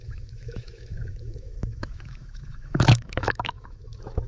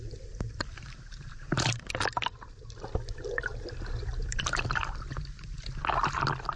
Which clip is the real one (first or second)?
second